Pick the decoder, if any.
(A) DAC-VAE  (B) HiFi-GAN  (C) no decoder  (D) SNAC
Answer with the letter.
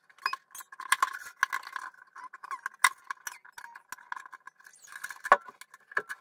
C